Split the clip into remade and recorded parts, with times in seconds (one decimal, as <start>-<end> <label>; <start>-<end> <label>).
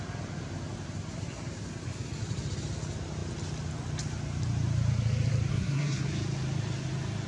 0.0-5.5 recorded; 5.5-6.1 remade; 6.1-7.3 recorded